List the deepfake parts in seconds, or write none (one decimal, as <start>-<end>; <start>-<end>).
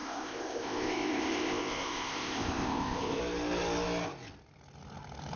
0.0-3.2